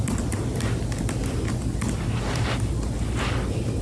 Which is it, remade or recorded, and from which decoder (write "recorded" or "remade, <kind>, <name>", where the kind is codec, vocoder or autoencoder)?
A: recorded